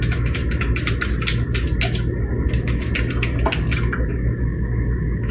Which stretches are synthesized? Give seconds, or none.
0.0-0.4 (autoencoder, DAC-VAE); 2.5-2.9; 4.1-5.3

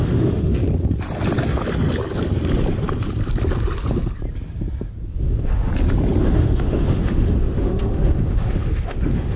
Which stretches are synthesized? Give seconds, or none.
0.0-0.6 (autoencoder, DAC-VAE); 5.1-5.7; 6.2-9.4

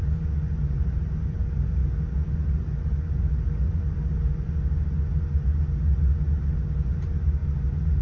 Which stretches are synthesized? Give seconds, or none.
none

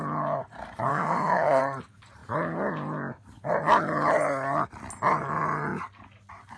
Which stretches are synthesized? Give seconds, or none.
0.9-1.6 (autoencoder, DAC-VAE)

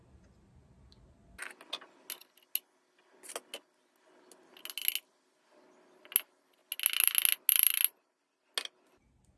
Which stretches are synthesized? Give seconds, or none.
none

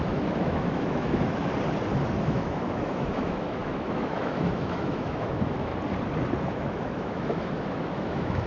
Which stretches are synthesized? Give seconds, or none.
0.0-1.5 (autoencoder, DAC-VAE); 2.2-5.7; 6.4-8.5